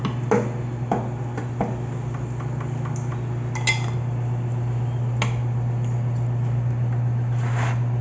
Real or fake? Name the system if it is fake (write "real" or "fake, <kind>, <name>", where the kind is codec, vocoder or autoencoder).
real